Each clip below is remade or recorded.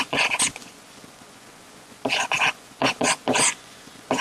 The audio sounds remade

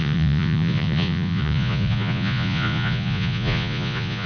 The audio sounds remade